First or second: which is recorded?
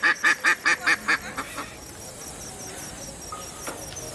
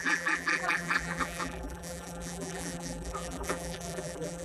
first